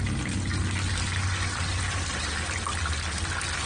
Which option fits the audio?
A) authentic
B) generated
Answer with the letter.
A